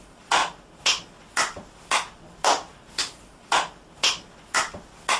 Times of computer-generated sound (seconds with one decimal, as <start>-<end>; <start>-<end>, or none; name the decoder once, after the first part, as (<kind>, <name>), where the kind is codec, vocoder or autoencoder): none